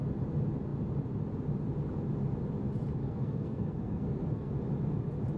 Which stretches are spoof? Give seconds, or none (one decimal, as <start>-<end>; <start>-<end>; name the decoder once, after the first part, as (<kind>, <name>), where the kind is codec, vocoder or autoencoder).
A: 3.0-4.5 (codec, SNAC)